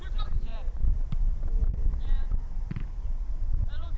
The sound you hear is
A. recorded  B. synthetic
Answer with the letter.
B